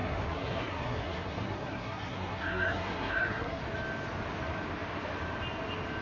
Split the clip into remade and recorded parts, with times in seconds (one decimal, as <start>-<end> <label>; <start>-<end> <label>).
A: 0.0-3.6 remade; 3.6-6.0 recorded